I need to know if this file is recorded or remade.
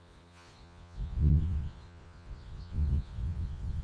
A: remade